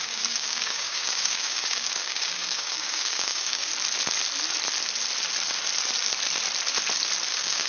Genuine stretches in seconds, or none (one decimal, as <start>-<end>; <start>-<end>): 3.7-7.3